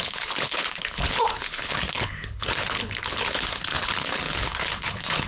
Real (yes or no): no